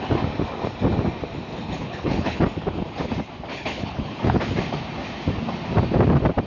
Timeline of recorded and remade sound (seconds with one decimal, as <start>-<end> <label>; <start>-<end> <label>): 0.0-1.5 recorded; 1.5-2.4 remade; 2.4-3.5 recorded; 3.5-4.4 remade; 4.4-6.5 recorded